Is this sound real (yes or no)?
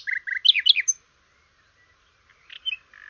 yes